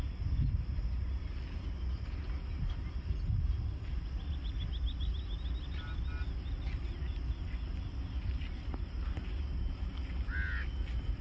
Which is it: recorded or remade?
recorded